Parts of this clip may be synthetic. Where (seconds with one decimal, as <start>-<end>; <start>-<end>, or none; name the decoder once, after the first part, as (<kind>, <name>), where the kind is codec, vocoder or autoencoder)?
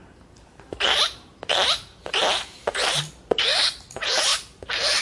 0.0-3.0 (vocoder, BigVGAN v2)